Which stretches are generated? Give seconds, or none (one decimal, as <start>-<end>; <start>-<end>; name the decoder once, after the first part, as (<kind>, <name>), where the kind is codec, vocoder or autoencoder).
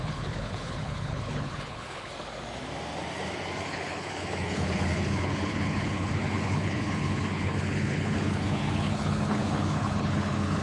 0.0-2.1 (codec, HILCodec); 3.6-10.6